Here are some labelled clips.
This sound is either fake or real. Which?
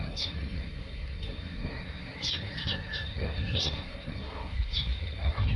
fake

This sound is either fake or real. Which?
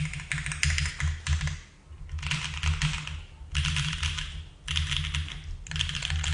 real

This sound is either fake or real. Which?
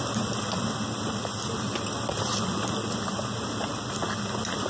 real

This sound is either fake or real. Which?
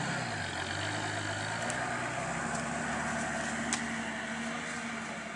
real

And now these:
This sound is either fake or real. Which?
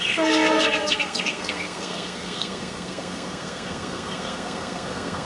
fake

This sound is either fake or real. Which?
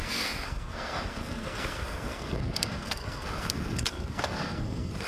fake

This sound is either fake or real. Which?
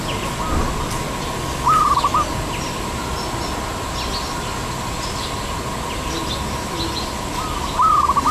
real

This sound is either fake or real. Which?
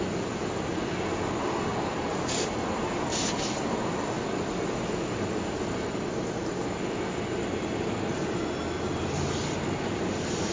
real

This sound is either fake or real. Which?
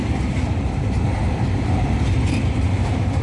real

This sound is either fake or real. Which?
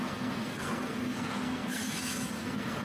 fake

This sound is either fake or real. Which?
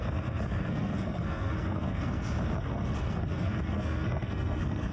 fake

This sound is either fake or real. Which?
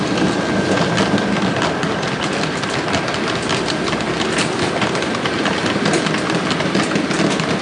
real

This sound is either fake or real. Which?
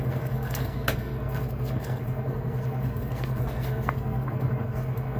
fake